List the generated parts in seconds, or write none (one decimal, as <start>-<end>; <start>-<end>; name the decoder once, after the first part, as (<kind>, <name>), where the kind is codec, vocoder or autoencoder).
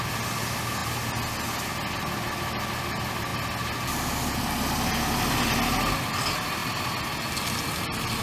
none